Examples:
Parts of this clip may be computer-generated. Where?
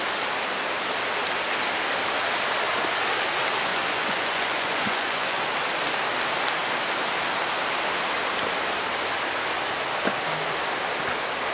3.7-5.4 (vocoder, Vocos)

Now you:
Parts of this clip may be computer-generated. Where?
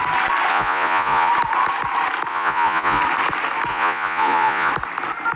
0.5-1.3 (vocoder, Vocos); 2.3-3.0; 3.7-4.7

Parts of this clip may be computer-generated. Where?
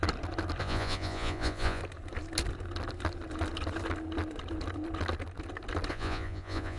0.6-1.8 (vocoder, Vocos); 5.9-6.8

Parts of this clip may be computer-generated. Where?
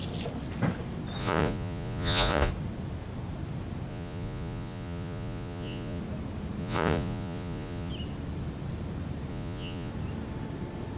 1.2-2.5 (vocoder, Vocos); 3.9-6.0; 6.6-7.9; 9.3-9.9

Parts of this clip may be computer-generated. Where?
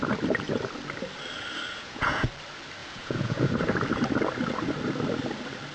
1.7-2.3 (vocoder, Vocos); 2.8-3.5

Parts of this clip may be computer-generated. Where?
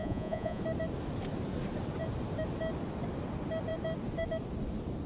0.0-0.6 (vocoder, Vocos)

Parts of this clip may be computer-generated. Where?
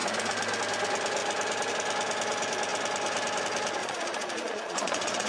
3.8-5.3 (vocoder, Vocos)